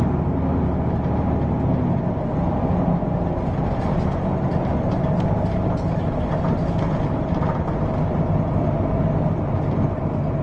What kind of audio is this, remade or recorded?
recorded